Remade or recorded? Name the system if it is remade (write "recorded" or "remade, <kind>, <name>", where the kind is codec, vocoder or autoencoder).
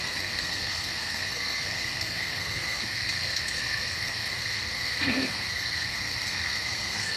remade, codec, SNAC